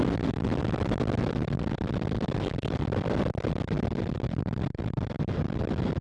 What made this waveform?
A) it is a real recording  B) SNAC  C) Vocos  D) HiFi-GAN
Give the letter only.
A